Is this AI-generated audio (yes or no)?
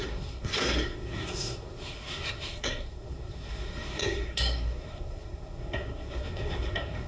yes